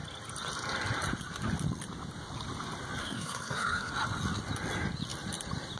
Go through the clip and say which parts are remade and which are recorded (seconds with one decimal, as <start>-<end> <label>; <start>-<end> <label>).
0.0-3.0 recorded; 3.0-3.9 remade; 3.9-5.8 recorded